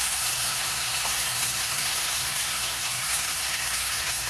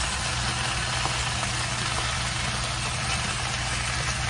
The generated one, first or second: first